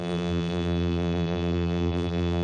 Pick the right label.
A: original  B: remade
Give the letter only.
B